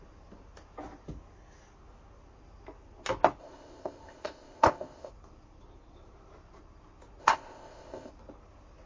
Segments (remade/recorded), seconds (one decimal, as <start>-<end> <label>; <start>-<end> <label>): 0.0-3.4 recorded; 3.4-5.1 remade; 5.1-7.2 recorded; 7.2-8.1 remade; 8.1-8.9 recorded